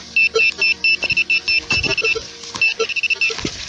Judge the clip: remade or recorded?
recorded